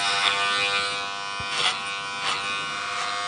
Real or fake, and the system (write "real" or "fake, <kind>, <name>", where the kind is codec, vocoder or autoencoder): real